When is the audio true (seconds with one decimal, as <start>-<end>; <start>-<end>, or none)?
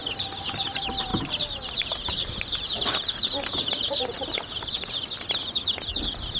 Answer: 0.0-1.1; 4.9-6.4